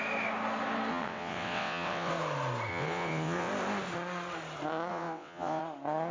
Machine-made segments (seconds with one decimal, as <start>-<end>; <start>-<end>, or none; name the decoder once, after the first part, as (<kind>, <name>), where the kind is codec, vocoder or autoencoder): 0.9-2.1 (vocoder, WaveNeXt); 2.7-3.5; 4.9-5.6